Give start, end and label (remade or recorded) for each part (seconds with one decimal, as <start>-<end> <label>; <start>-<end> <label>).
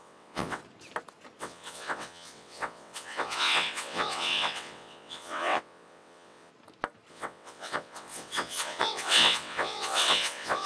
0.0-0.6 remade; 0.6-1.4 recorded; 1.4-6.5 remade; 6.5-7.1 recorded; 7.1-10.7 remade